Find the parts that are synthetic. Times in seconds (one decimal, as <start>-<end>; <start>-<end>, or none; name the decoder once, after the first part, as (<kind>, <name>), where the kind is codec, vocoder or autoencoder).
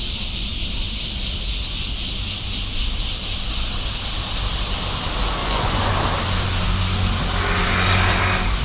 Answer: 5.4-5.9 (vocoder, Vocos)